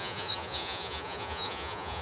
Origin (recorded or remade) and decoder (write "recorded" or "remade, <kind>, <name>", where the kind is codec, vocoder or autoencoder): remade, vocoder, Vocos